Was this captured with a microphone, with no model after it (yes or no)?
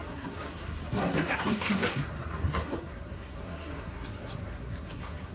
no